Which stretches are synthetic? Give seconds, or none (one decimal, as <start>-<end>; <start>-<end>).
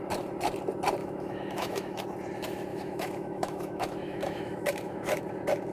1.0-2.0; 2.7-5.2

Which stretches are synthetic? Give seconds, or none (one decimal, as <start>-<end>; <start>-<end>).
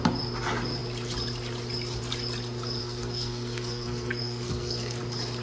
2.8-5.0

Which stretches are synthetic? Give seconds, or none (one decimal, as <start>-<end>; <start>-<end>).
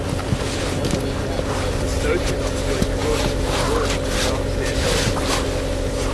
1.9-2.4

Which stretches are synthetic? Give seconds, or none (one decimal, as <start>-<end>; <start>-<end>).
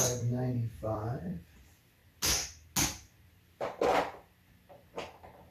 0.0-2.0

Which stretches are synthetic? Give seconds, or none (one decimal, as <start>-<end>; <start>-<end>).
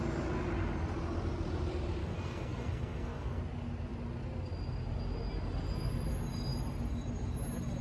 2.0-3.4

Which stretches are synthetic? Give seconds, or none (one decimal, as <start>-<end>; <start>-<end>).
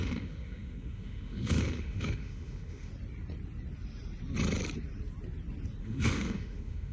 0.0-2.9; 5.8-6.9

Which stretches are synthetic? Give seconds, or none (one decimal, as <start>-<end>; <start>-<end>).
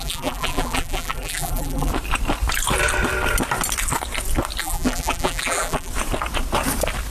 0.0-1.9; 4.6-5.9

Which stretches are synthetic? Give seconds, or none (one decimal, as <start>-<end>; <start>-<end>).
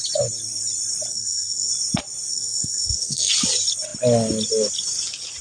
1.1-1.7; 2.3-3.3